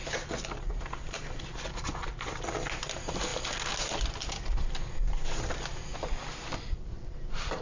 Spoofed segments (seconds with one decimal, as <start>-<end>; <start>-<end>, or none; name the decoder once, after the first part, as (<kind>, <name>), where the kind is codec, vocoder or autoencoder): 5.9-7.6 (vocoder, BigVGAN v2)